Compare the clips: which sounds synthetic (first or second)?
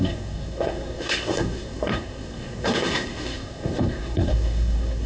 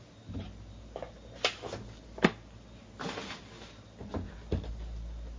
first